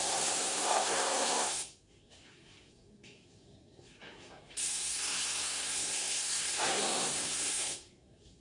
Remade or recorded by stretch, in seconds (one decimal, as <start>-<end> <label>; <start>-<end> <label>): 0.0-8.4 remade